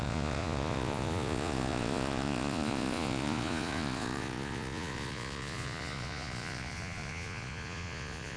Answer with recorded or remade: remade